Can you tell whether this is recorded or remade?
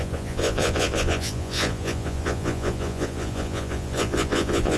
remade